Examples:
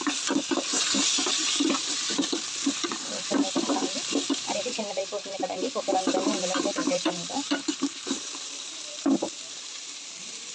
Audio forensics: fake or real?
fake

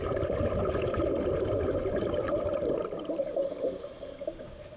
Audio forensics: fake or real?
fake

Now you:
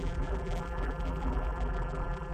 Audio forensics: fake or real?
fake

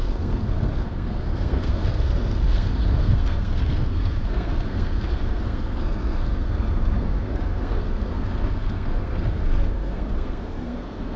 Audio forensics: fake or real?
fake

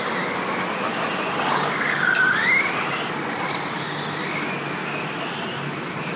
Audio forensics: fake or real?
real